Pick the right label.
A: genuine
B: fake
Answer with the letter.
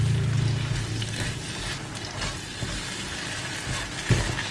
A